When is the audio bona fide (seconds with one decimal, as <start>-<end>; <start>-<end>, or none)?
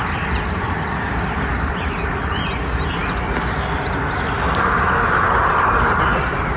3.0-5.4